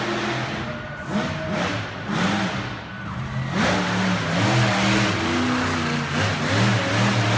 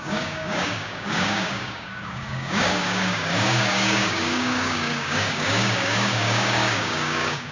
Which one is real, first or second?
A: first